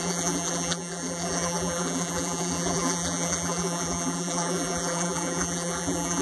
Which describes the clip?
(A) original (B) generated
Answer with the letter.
B